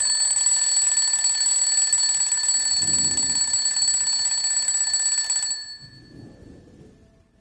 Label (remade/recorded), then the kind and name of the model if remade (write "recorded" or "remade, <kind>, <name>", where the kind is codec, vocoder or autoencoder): recorded